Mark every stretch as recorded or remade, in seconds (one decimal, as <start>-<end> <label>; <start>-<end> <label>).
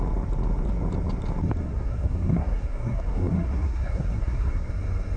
0.0-1.6 recorded; 1.6-4.7 remade; 4.7-5.2 recorded